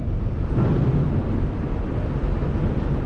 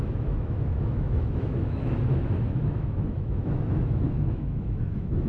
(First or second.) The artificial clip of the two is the second